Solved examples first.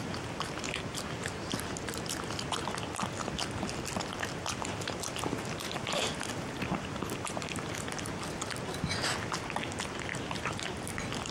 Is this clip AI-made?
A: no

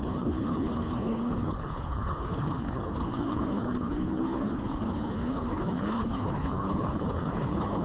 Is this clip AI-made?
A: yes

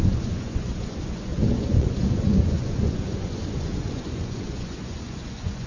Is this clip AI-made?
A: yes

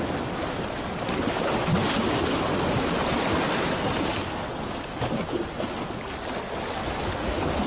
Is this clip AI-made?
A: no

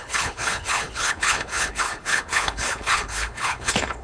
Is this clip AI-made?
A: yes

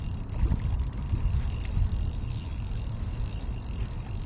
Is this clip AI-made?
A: no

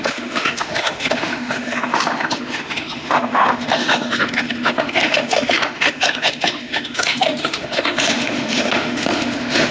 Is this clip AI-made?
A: yes